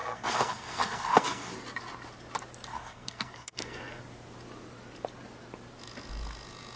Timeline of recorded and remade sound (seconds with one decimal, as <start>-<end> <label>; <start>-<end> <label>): 0.0-1.5 remade; 1.5-2.7 recorded; 2.7-4.0 remade; 4.0-6.8 recorded